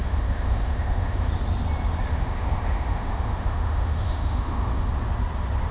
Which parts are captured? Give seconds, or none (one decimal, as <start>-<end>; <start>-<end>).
1.3-2.1; 4.9-5.7